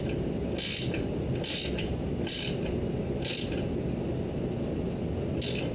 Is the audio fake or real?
real